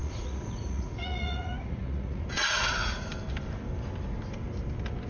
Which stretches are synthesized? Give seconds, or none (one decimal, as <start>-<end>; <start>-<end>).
0.0-3.1